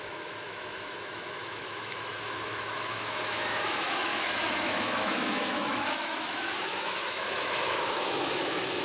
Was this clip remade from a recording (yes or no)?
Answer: yes